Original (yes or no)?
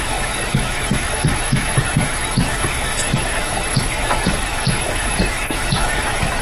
no